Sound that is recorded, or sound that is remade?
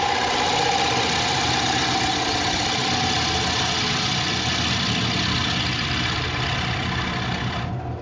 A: recorded